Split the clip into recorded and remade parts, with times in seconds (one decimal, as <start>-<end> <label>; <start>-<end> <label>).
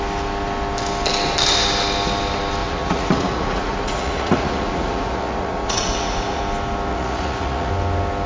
0.0-2.6 recorded; 2.6-6.4 remade; 6.4-6.9 recorded; 6.9-7.7 remade; 7.7-8.3 recorded